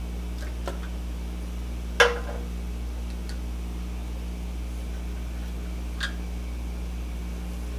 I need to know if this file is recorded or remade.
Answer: recorded